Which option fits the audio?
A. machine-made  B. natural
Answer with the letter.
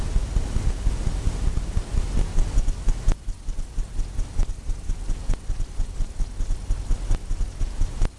B